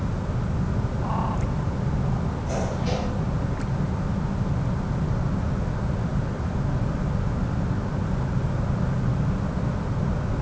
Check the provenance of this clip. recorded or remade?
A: recorded